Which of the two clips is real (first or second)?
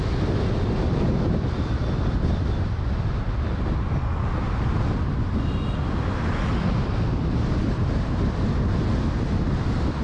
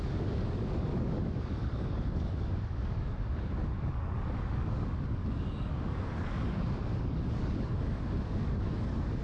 first